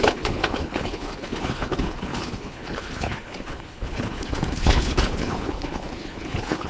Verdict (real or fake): fake